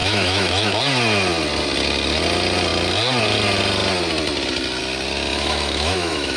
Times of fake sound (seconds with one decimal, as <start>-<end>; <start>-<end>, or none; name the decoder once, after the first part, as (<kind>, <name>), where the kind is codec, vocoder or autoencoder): 0.0-0.8 (autoencoder, DAC-VAE); 5.3-6.4